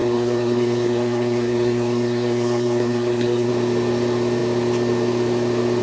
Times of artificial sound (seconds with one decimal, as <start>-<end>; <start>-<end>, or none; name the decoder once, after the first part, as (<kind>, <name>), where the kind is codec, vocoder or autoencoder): 0.0-3.5 (codec, SNAC)